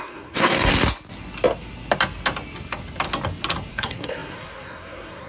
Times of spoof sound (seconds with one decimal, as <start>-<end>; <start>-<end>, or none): 0.0-0.7; 3.7-5.3